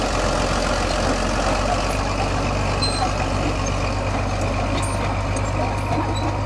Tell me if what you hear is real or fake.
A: real